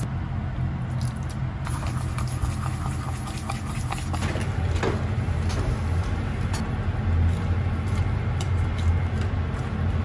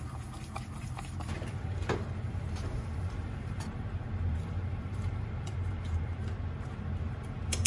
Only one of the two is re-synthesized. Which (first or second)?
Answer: second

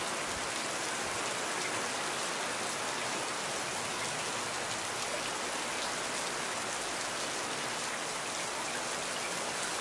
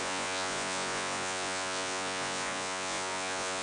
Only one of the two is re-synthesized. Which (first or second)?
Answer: second